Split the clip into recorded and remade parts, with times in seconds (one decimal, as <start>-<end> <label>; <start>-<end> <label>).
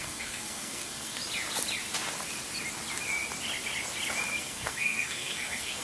0.0-1.2 remade; 1.2-4.4 recorded; 4.4-5.8 remade